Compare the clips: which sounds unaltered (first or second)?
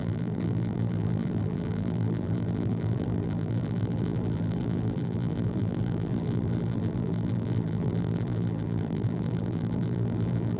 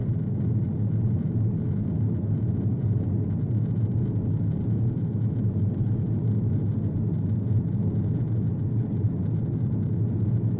second